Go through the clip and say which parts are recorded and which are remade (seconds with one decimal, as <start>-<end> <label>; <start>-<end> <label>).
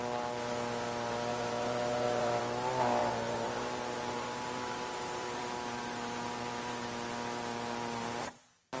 0.0-1.3 recorded; 1.3-2.4 remade; 2.4-3.0 recorded; 3.0-5.4 remade; 5.4-8.8 recorded